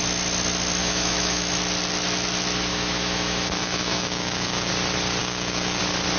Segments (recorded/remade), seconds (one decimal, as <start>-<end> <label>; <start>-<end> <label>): 0.0-0.8 recorded; 0.8-1.4 remade; 1.4-2.7 recorded; 2.7-4.7 remade; 4.7-5.2 recorded; 5.2-5.8 remade; 5.8-6.2 recorded